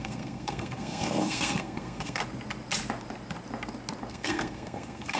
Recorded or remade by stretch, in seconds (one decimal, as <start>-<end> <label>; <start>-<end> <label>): 0.0-2.2 remade; 2.2-4.1 recorded; 4.1-5.2 remade